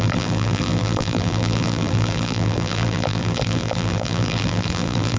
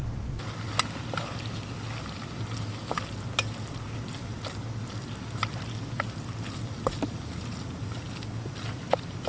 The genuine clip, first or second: second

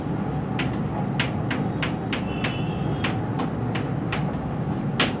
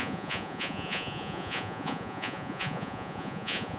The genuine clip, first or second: first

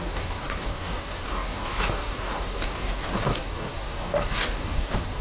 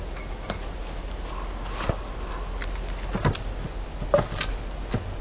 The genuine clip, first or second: second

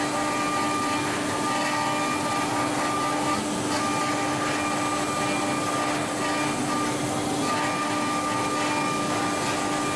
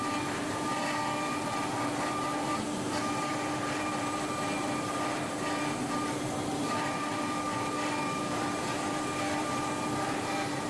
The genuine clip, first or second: first